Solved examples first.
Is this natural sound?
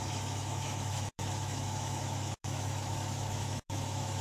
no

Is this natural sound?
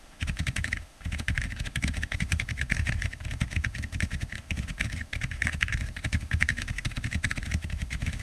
no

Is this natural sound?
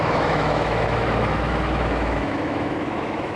no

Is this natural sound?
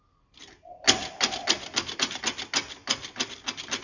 yes